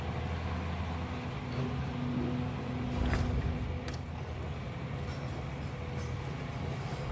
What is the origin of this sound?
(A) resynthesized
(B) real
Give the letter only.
B